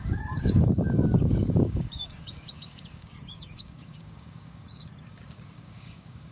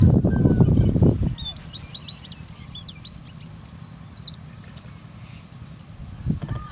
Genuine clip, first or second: second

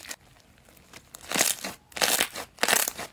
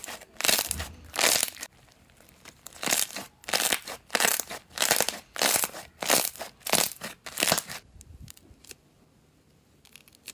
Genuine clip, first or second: first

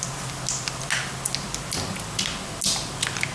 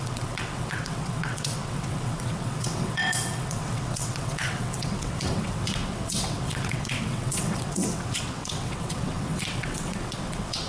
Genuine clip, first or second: first